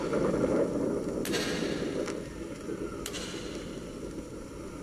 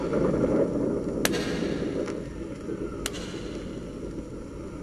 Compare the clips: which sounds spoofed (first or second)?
first